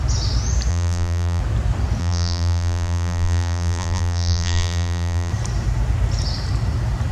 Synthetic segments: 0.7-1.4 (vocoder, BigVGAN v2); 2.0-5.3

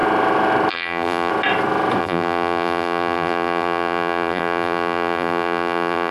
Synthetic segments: 0.7-1.3 (vocoder, BigVGAN v2); 2.0-6.1

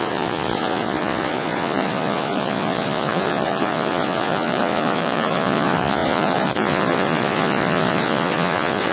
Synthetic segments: 0.0-8.9 (vocoder, Vocos)